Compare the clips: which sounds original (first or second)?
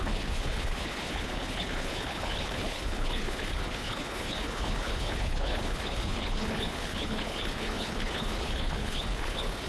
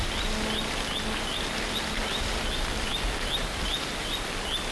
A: second